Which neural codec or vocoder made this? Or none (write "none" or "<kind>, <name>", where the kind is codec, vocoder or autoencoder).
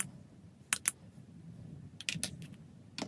none